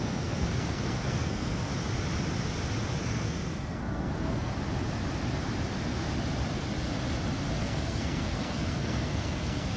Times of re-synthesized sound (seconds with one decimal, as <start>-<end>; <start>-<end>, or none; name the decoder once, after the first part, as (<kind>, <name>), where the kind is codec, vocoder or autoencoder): 0.0-1.7 (codec, SNAC); 3.0-4.5; 7.6-9.8